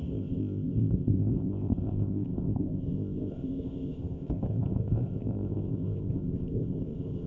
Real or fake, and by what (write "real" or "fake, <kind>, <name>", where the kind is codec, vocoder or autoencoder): fake, codec, ZipCodec